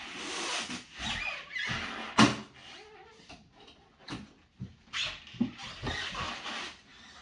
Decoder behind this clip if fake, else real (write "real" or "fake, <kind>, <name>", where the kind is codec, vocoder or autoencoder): real